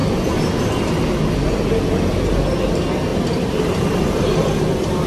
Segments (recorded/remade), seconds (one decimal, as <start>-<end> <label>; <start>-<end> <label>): 0.0-3.1 recorded; 3.1-5.1 remade